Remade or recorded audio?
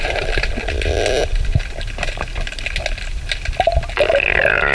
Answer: recorded